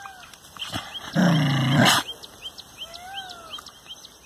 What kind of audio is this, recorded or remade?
recorded